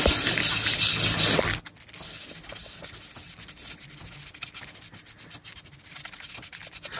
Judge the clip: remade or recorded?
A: recorded